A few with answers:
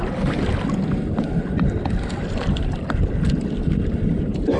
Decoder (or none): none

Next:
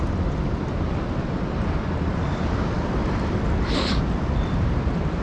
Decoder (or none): none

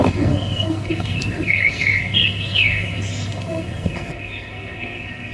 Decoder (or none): codec, SNAC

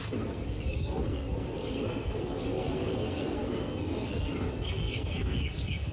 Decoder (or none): codec, SNAC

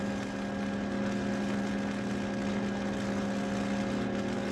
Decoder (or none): none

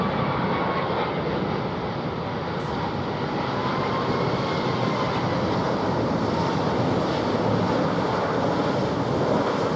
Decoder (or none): none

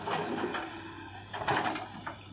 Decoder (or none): none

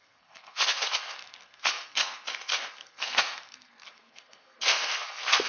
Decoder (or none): codec, SNAC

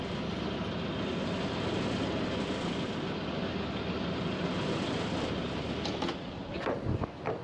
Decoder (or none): none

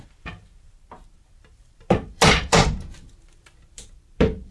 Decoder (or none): vocoder, BigVGAN v2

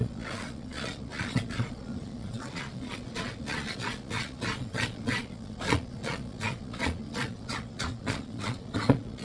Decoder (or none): vocoder, Vocos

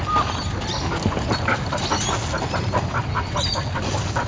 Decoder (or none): none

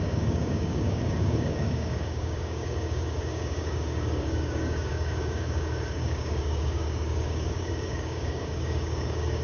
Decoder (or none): codec, DAC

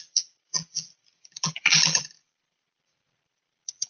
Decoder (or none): vocoder, BigVGAN v2